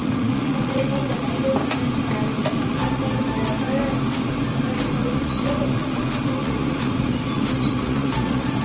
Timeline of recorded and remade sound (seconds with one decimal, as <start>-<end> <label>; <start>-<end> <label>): 0.0-1.3 remade; 1.3-2.4 recorded; 2.4-3.0 remade; 3.0-5.0 recorded; 5.0-6.0 remade; 6.0-6.4 recorded; 6.4-8.6 remade